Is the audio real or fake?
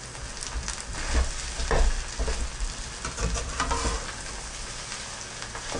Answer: real